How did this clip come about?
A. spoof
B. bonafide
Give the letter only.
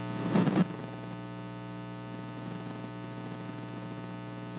B